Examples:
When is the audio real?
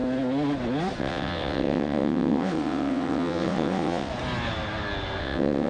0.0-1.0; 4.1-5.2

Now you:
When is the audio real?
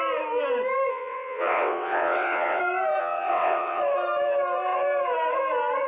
0.0-0.9; 2.6-3.0; 3.8-5.9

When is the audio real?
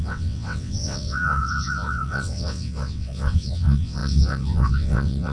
none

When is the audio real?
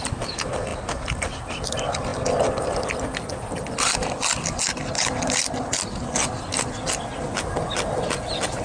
0.0-8.6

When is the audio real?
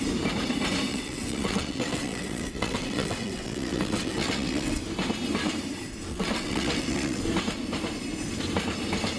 0.0-0.9; 4.8-6.1; 7.2-9.2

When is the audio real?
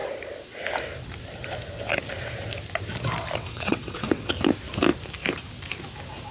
0.0-3.4; 4.3-6.3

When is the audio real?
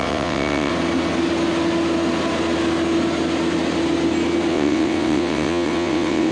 0.7-4.5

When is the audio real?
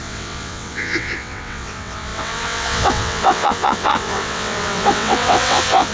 none